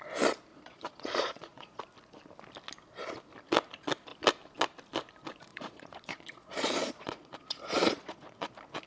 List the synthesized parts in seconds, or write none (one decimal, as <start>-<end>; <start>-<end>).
0.5-1.8; 5.5-8.5